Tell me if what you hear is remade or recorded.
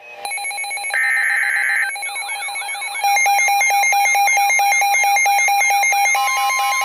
recorded